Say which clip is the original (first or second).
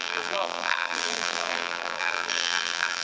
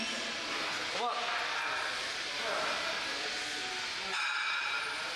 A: second